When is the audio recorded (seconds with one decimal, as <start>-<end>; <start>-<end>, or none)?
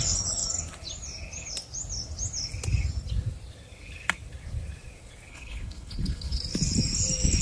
0.0-5.3; 6.4-7.4